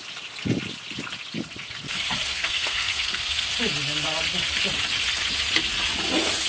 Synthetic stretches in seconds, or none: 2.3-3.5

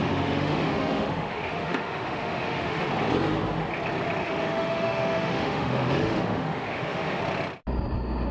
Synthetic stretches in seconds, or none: 0.0-2.9; 4.2-7.2